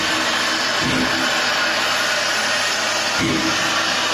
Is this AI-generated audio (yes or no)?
no